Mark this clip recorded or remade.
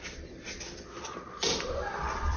remade